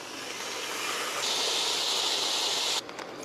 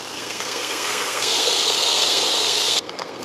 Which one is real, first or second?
first